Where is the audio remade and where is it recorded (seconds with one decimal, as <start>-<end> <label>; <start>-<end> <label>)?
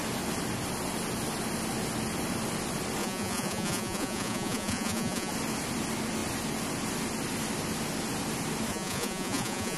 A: 0.0-3.0 recorded; 3.0-5.3 remade; 5.3-8.7 recorded; 8.7-9.8 remade